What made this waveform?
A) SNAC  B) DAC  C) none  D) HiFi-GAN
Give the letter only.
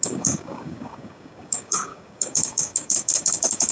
B